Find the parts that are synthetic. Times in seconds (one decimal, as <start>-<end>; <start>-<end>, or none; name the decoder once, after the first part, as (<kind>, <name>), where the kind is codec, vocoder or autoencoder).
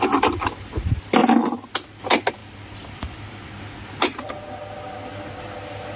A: none